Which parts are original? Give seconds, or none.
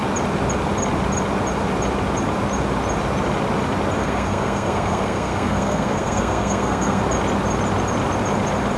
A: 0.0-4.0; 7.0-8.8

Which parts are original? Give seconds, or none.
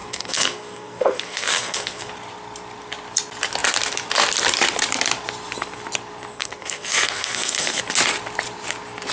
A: 2.1-6.3; 7.8-9.1